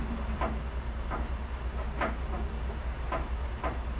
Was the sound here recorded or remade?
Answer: recorded